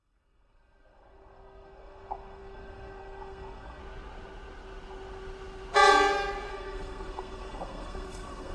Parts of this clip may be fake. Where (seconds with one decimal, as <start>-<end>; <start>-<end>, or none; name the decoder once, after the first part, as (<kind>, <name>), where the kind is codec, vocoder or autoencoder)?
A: 0.0-3.8 (codec, SNAC); 6.5-8.5